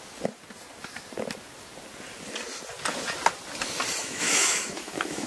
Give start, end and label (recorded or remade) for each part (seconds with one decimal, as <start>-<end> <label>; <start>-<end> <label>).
0.0-4.0 recorded; 4.0-5.3 remade